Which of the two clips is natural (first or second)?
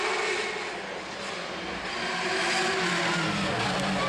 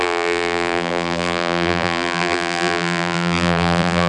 first